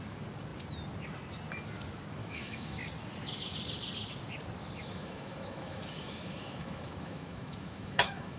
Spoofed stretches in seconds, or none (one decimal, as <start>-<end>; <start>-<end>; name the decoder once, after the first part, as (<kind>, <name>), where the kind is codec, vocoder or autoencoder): 2.2-2.8 (autoencoder, DAC-VAE); 4.8-8.4